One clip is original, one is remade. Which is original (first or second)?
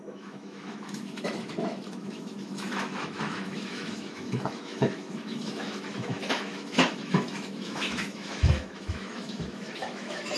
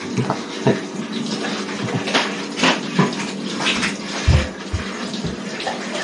second